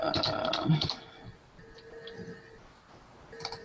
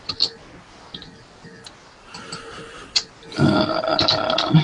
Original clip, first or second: first